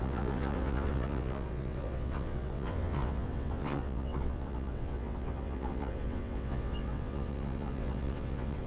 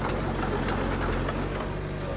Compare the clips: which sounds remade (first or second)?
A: first